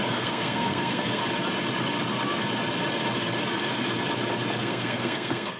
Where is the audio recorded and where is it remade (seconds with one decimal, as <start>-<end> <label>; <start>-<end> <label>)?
0.0-1.2 remade; 1.2-4.6 recorded; 4.6-5.6 remade